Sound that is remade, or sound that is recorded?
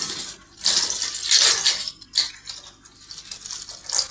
recorded